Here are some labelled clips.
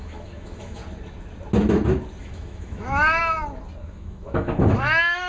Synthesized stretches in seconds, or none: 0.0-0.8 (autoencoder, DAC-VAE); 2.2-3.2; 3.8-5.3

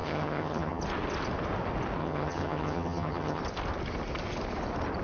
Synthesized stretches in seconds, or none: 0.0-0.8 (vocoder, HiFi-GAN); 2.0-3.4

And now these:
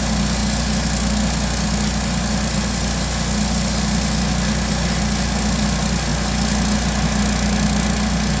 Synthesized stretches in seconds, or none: none

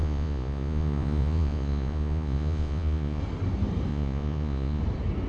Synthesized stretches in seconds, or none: 0.0-3.2 (vocoder, Vocos); 3.9-4.8

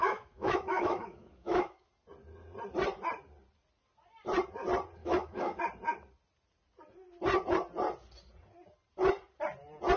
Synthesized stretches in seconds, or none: 0.0-1.9 (autoencoder, DAC-VAE); 5.0-5.6